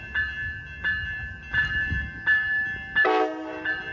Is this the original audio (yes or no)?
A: yes